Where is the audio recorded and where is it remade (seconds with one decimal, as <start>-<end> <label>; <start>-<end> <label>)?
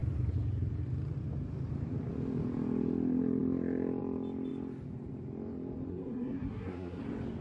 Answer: 0.0-5.9 recorded; 5.9-7.0 remade; 7.0-7.4 recorded